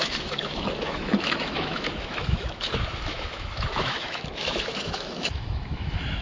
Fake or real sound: fake